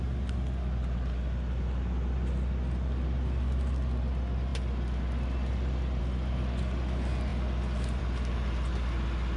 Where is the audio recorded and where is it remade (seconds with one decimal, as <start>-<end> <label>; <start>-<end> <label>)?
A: 0.0-9.4 recorded